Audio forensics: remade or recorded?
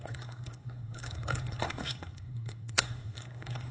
remade